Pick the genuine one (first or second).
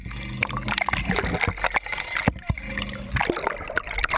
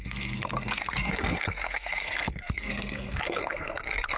first